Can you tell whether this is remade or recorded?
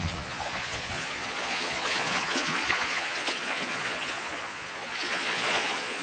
remade